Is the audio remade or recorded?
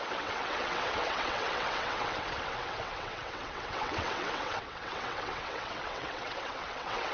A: remade